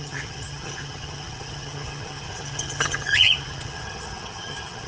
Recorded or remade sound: remade